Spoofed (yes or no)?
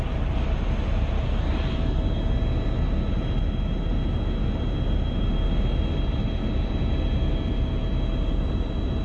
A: no